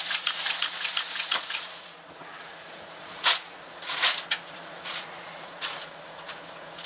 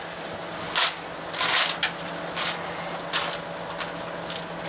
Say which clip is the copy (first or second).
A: first